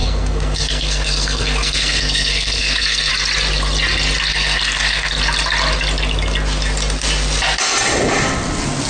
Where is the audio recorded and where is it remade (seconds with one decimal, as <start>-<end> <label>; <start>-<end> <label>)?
0.0-3.1 remade; 3.1-4.3 recorded; 4.3-5.1 remade; 5.1-8.9 recorded